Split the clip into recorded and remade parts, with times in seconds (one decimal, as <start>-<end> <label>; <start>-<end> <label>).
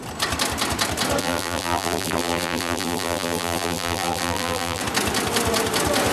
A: 0.0-1.2 recorded; 1.2-4.8 remade; 4.8-6.1 recorded